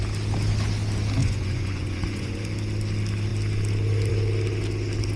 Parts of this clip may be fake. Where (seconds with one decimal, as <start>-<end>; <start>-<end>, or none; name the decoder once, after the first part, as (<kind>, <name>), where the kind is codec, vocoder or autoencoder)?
1.2-2.4 (vocoder, Vocos)